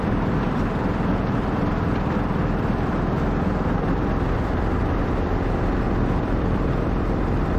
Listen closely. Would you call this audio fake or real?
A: fake